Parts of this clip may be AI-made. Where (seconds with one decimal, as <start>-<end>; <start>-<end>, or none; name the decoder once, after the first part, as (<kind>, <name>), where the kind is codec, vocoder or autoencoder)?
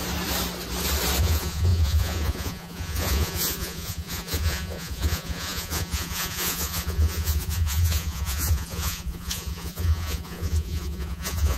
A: 1.2-11.6 (vocoder, Vocos)